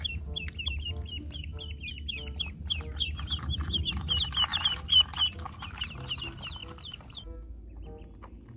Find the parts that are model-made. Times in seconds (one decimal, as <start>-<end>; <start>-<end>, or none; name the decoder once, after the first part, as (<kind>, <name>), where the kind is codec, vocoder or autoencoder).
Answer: 4.5-5.3 (vocoder, BigVGAN v2)